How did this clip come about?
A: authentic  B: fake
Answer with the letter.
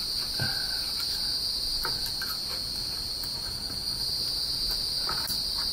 A